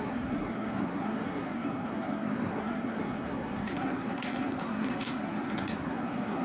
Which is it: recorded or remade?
remade